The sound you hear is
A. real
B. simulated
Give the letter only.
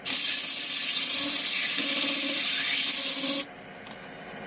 A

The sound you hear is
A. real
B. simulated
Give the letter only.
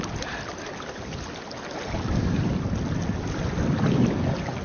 A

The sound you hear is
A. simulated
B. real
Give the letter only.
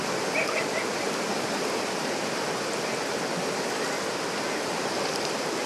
B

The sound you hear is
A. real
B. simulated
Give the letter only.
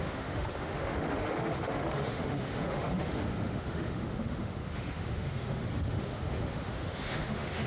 B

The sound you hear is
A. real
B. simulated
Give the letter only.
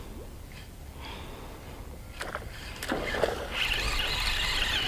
A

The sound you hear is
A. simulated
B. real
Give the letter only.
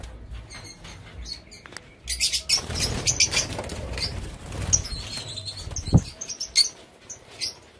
B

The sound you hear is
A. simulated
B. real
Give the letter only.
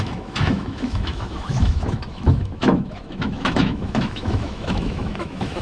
A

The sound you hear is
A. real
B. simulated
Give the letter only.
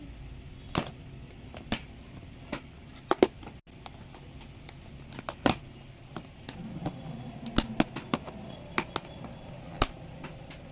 A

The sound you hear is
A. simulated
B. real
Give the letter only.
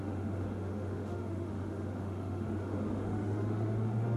A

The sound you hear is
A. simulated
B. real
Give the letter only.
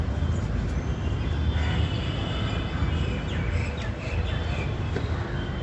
B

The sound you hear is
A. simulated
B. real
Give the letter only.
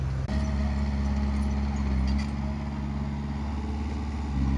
B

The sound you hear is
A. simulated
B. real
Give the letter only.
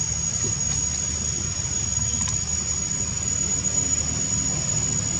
B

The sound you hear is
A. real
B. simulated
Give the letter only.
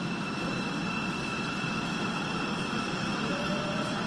A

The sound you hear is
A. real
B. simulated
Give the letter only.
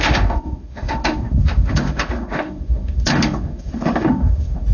B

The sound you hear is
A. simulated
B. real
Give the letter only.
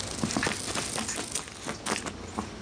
B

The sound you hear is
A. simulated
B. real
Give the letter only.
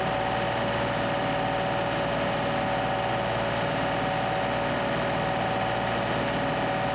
B